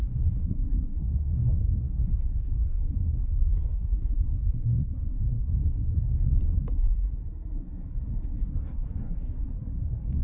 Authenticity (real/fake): fake